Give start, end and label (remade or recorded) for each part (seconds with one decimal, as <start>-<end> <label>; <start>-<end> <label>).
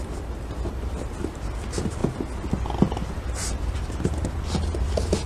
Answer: 0.0-5.3 recorded